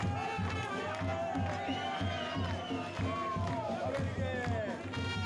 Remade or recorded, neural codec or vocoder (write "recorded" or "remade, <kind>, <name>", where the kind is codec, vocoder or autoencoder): recorded